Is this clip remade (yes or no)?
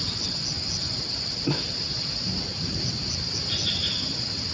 no